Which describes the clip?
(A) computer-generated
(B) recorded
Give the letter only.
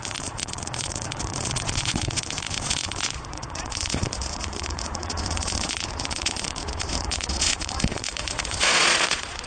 A